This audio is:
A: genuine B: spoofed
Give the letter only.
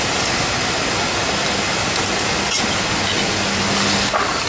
A